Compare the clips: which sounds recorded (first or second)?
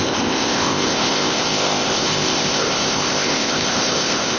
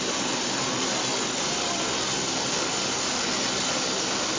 second